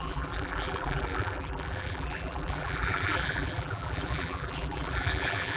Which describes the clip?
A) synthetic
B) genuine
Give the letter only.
A